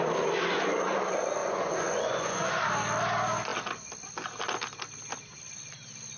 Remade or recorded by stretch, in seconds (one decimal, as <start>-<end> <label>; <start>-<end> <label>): 0.0-1.4 recorded; 1.4-2.6 remade; 2.6-6.2 recorded